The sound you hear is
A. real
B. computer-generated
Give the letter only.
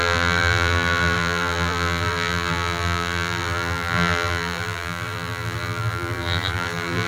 B